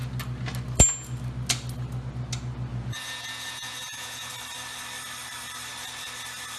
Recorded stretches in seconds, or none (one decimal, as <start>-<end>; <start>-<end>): 0.0-2.7; 4.3-6.6